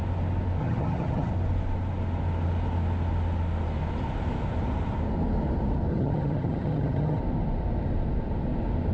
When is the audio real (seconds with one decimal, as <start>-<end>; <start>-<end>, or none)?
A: 0.0-0.6; 1.3-5.9; 7.2-8.9